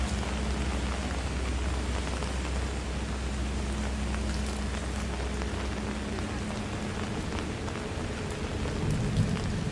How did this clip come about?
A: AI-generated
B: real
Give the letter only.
B